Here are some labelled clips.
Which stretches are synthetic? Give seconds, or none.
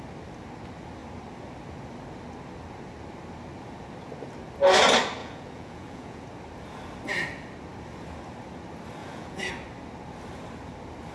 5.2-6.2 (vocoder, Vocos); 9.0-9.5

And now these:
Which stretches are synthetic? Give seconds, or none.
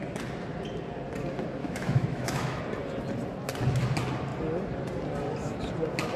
1.6-2.6 (autoencoder, DAC-VAE)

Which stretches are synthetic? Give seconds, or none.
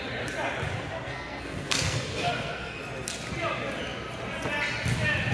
1.0-2.8 (codec, SNAC)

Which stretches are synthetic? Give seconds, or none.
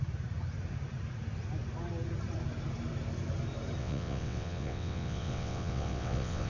3.8-6.5 (vocoder, WaveNeXt)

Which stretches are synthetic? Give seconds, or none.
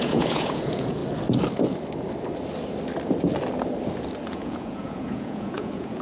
0.0-1.0 (vocoder, Vocos); 4.3-6.0